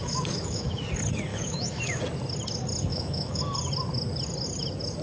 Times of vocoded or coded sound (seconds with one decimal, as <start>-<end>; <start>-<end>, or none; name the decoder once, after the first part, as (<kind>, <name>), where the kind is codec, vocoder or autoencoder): 0.0-0.8 (autoencoder, DAC-VAE); 1.3-2.0; 2.9-3.4